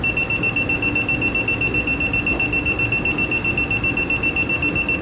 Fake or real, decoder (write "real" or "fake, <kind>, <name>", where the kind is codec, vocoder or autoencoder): real